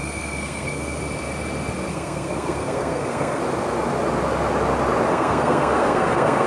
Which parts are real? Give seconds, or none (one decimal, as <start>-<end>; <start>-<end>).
1.0-1.9; 3.4-5.1